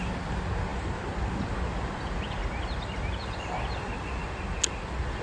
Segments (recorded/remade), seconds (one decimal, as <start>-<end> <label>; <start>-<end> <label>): 0.0-5.2 recorded